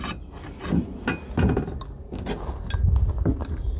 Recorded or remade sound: recorded